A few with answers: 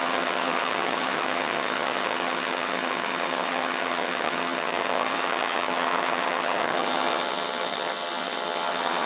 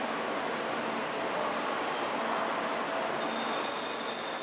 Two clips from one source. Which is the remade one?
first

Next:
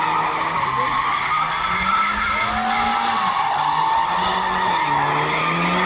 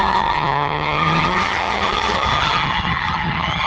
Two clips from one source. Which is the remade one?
second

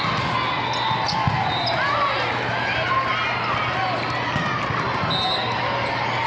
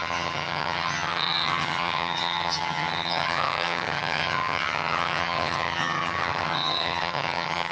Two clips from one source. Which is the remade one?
second